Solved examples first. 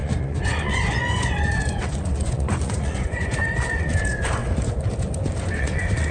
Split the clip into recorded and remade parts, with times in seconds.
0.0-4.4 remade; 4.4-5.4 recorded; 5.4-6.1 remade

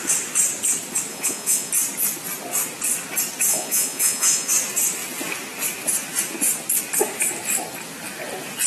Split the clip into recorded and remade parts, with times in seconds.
0.0-1.1 recorded; 1.1-1.7 remade; 1.7-3.5 recorded; 3.5-4.5 remade; 4.5-8.7 recorded

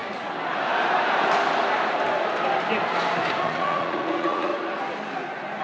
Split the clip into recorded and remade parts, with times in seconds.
0.0-3.4 recorded; 3.4-4.5 remade; 4.5-5.6 recorded